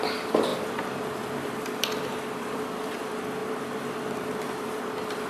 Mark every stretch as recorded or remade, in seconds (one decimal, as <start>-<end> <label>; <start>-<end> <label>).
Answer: 0.0-5.3 remade